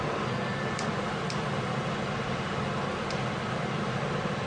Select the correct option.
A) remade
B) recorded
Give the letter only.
B